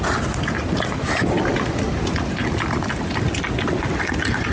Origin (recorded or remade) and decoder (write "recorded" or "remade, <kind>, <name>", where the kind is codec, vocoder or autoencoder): recorded